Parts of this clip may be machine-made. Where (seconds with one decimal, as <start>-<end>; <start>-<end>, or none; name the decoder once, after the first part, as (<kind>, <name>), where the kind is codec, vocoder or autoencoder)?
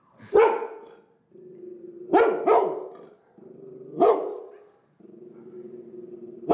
none